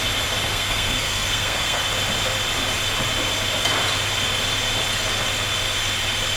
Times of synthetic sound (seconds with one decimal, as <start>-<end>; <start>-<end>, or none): 0.5-1.8